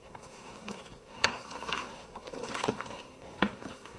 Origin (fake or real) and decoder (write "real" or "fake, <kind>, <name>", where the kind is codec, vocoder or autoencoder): fake, codec, SNAC